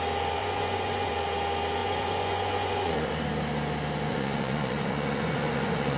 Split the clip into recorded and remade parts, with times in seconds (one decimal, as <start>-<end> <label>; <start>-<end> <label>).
0.0-0.4 recorded; 0.4-1.1 remade; 1.1-1.8 recorded; 1.8-3.1 remade; 3.1-4.1 recorded; 4.1-6.0 remade